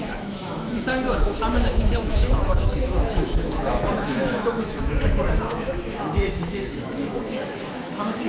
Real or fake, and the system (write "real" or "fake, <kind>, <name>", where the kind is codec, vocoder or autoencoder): fake, autoencoder, DAC-VAE